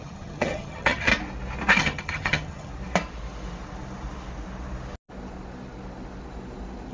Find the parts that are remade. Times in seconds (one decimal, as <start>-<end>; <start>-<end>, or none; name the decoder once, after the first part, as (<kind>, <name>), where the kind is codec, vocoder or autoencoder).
0.0-1.1 (vocoder, HiFi-GAN); 1.8-2.7